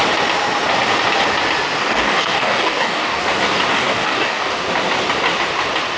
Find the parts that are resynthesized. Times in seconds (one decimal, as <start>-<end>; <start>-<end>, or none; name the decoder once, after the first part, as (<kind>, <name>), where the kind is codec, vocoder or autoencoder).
1.8-3.2 (codec, DAC); 3.7-4.5